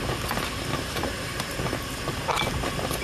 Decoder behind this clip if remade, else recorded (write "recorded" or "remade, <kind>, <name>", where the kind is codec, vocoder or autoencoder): recorded